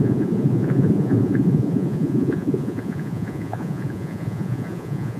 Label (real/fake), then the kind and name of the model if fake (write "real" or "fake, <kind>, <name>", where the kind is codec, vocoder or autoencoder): fake, vocoder, Vocos